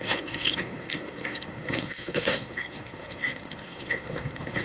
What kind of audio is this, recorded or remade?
remade